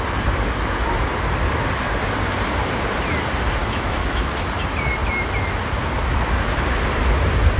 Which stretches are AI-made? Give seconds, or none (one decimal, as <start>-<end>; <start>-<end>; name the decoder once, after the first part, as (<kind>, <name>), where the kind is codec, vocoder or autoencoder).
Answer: 3.6-4.3 (autoencoder, DAC-VAE)

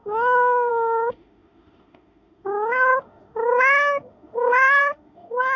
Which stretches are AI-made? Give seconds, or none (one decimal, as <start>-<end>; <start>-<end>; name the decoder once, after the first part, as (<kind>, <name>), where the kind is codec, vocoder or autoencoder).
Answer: 0.0-5.6 (autoencoder, DAC-VAE)

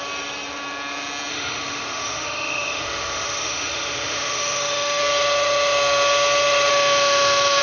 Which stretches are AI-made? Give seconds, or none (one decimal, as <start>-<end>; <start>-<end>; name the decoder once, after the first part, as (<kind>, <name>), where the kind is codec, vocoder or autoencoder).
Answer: 1.3-5.0 (autoencoder, DAC-VAE); 6.7-7.6

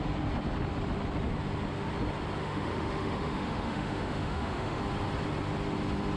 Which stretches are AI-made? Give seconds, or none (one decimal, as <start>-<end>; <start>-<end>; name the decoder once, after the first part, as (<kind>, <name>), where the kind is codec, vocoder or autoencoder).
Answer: 2.4-4.8 (autoencoder, DAC-VAE)

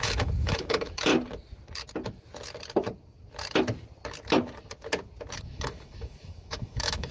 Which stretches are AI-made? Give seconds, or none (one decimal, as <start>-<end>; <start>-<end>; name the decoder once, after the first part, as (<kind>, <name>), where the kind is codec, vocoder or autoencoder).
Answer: 0.0-1.1 (autoencoder, DAC-VAE); 5.4-7.1

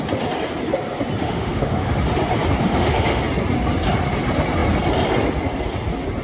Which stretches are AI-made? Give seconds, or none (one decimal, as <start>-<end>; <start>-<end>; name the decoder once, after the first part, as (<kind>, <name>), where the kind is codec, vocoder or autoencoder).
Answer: 1.2-1.9 (autoencoder, DAC-VAE); 2.6-3.2